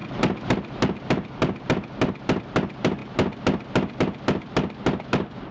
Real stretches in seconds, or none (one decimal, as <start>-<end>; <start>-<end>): 0.0-5.5